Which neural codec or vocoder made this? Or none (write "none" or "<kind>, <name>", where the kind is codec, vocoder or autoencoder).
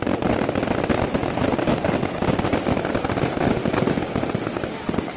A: none